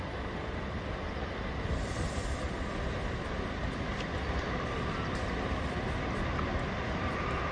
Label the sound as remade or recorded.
recorded